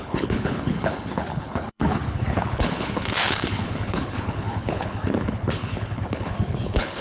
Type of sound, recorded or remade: remade